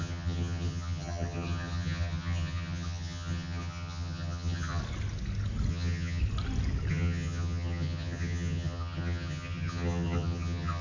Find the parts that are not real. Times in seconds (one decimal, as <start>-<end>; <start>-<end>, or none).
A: 0.0-4.8; 5.7-6.2; 6.9-10.8